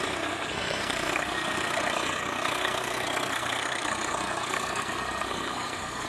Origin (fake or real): fake